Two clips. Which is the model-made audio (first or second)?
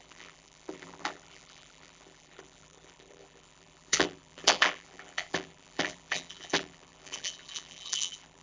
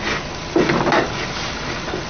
first